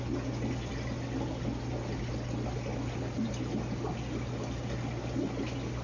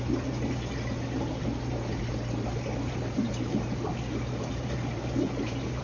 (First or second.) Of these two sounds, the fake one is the second